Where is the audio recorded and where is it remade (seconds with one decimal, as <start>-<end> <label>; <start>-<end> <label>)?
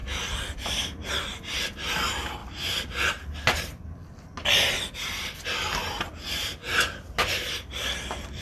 0.0-2.4 recorded; 2.4-3.1 remade; 3.1-8.4 recorded